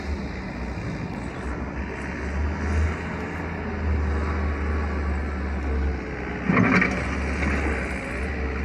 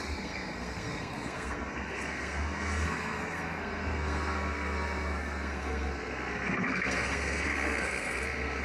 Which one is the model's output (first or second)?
second